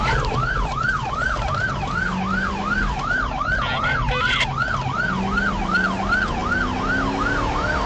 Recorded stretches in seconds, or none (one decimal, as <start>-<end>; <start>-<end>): 0.0-7.9